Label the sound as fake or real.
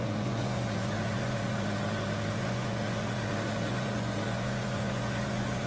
fake